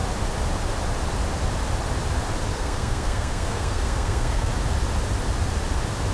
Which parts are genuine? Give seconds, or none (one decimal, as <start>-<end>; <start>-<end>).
0.0-2.5; 4.5-6.1